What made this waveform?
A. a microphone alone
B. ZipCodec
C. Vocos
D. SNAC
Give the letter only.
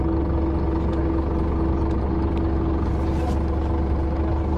A